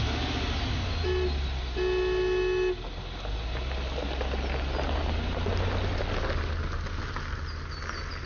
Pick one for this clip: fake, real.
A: real